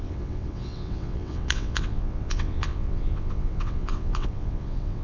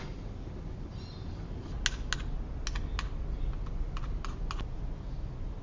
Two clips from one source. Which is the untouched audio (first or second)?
second